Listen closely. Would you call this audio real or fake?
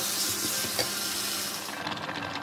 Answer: real